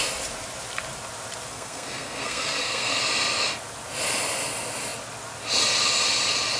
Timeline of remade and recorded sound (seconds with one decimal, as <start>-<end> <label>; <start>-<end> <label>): 0.0-1.5 recorded; 1.5-3.0 remade; 3.0-6.6 recorded